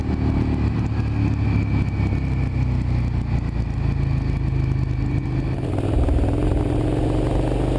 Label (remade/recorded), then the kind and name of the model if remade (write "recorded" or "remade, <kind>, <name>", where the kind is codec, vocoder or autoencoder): recorded